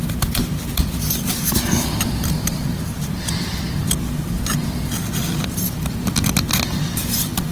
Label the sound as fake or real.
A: fake